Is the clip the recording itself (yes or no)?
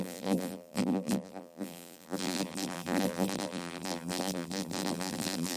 no